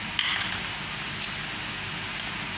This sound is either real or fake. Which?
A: real